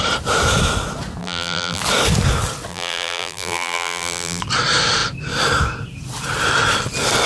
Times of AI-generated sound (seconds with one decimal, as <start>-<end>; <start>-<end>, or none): 1.2-1.8; 2.7-4.4